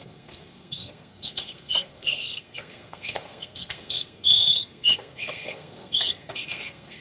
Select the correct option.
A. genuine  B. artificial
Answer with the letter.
B